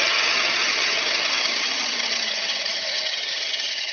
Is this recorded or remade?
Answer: remade